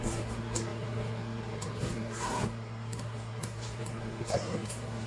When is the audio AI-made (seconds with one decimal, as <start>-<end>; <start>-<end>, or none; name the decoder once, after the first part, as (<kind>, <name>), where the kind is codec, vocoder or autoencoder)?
0.0-5.1 (codec, SNAC)